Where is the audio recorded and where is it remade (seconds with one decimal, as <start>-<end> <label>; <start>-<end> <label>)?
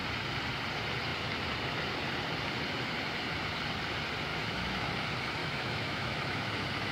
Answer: 0.0-4.3 recorded; 4.3-4.9 remade; 4.9-5.4 recorded; 5.4-6.5 remade; 6.5-6.9 recorded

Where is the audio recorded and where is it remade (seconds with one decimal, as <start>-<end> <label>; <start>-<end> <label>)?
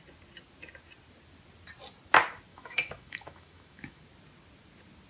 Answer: 0.0-2.5 recorded; 2.5-4.0 remade; 4.0-5.1 recorded